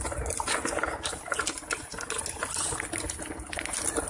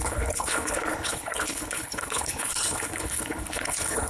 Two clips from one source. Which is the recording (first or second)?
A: first